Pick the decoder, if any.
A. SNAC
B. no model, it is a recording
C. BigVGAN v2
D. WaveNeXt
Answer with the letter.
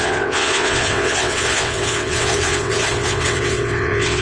D